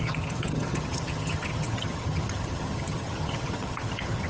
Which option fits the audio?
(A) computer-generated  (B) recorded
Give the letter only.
A